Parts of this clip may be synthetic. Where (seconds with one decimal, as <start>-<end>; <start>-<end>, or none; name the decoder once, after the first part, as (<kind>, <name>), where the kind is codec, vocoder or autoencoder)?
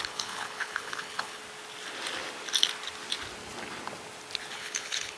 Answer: 0.0-1.4 (codec, HILCodec); 4.5-5.2